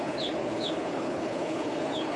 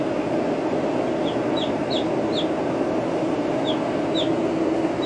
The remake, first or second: first